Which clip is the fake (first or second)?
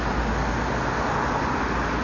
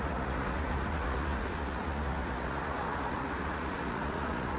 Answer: second